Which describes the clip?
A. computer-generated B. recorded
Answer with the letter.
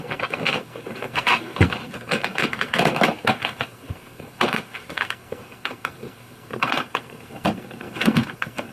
A